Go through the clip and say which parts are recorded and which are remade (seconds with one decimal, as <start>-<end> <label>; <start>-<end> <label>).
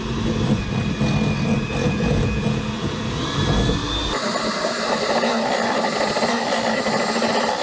0.0-1.8 recorded; 1.8-3.2 remade; 3.2-7.6 recorded